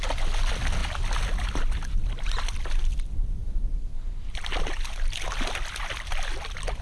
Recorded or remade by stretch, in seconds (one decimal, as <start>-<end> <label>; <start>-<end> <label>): 0.0-6.8 recorded